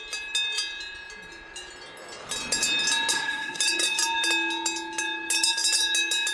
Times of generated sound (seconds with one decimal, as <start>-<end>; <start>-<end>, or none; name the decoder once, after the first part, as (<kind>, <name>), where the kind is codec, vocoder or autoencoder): 3.1-3.6 (codec, SNAC)